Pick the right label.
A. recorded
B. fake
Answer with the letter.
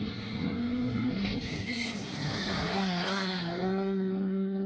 B